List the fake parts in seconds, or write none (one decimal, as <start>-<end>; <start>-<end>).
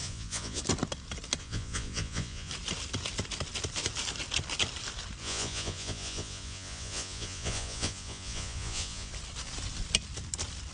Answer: 0.0-0.6; 1.4-2.5; 5.2-9.1